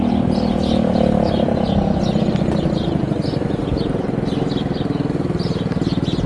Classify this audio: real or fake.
real